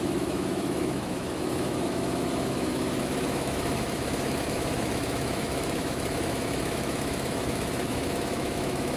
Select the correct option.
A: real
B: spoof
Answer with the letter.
B